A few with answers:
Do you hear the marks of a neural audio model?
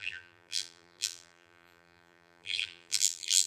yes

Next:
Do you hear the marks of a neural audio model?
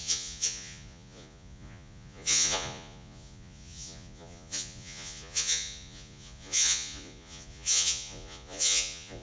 yes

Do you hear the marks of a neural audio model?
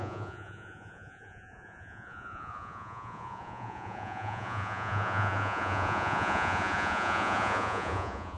yes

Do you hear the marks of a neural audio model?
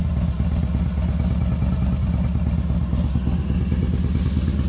no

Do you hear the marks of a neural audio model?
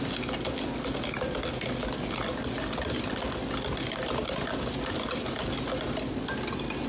no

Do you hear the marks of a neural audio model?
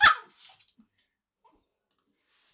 no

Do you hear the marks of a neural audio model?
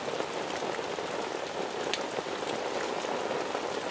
no